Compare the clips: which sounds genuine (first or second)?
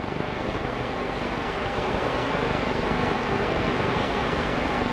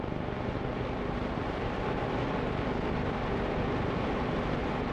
second